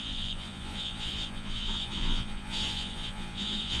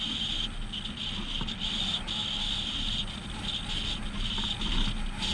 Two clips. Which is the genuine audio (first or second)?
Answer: second